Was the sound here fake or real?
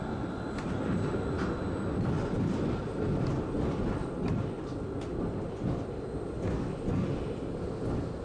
real